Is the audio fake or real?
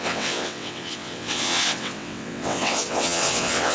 fake